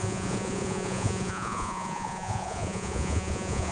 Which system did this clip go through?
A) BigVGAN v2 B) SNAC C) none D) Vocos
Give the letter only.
D